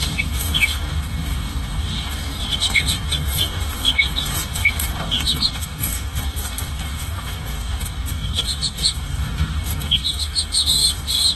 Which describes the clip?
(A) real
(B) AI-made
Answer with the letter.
B